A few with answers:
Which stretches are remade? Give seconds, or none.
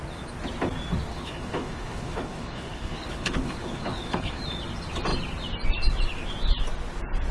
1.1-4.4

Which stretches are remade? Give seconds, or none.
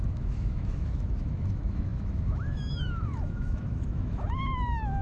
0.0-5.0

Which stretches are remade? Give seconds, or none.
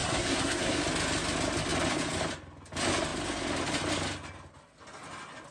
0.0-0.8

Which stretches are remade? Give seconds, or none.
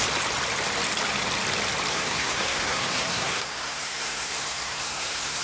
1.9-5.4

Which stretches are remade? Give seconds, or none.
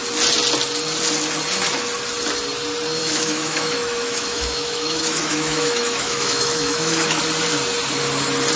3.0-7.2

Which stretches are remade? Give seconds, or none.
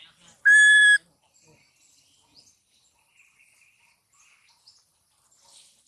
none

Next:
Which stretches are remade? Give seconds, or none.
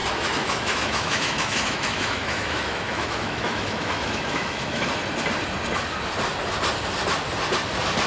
0.0-4.9